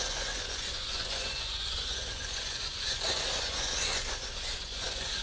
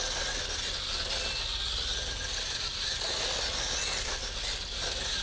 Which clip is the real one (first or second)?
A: second